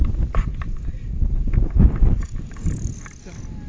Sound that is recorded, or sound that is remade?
recorded